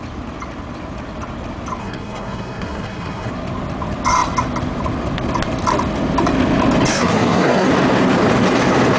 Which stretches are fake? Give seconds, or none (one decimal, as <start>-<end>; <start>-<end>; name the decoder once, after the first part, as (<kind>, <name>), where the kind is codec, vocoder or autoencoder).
1.8-3.3 (codec, SNAC); 6.9-7.7